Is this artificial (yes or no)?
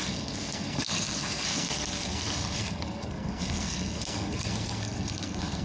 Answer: yes